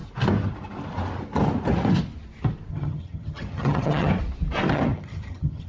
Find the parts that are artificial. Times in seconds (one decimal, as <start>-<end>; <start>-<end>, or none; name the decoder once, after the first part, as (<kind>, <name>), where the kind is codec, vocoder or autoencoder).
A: 2.7-4.1 (vocoder, HiFi-GAN); 4.7-5.7